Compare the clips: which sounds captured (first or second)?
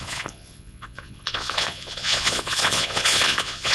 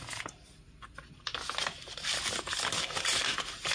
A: second